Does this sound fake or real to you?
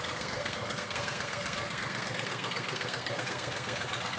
fake